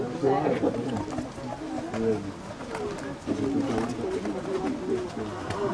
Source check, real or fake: real